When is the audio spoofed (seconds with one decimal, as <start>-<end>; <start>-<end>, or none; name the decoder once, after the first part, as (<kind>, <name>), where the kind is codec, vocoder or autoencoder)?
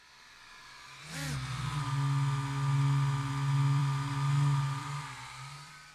3.8-5.9 (vocoder, BigVGAN v2)